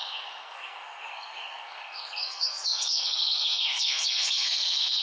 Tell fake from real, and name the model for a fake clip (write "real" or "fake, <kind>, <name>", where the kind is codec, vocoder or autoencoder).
fake, codec, SNAC